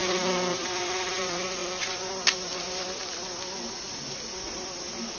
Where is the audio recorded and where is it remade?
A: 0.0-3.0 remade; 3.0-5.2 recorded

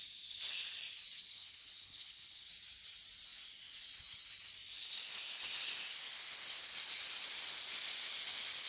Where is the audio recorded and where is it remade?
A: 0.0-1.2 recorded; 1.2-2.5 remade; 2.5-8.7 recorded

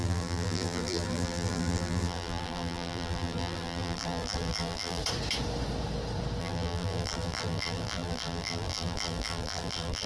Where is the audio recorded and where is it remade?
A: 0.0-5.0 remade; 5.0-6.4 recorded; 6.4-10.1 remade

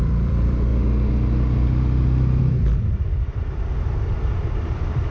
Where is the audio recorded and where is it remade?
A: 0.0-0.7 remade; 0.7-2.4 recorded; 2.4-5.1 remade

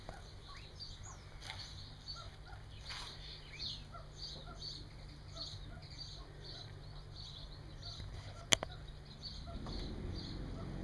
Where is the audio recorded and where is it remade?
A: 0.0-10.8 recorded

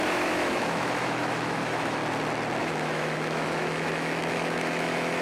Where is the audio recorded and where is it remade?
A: 0.0-2.0 remade; 2.0-2.6 recorded; 2.6-5.2 remade

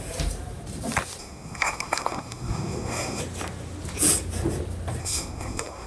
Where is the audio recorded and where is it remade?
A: 0.0-1.2 recorded; 1.2-3.2 remade; 3.2-5.0 recorded; 5.0-5.9 remade

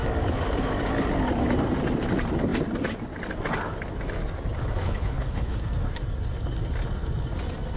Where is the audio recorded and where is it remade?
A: 0.0-4.8 recorded; 4.8-5.6 remade; 5.6-7.8 recorded